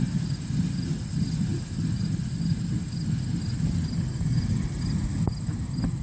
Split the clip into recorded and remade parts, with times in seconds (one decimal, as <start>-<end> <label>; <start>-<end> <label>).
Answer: 0.0-6.0 recorded